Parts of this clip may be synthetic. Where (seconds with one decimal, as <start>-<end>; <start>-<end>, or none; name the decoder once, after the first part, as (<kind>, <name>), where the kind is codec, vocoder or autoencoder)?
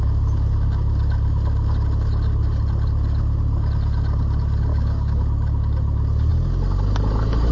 4.7-5.2 (codec, DAC)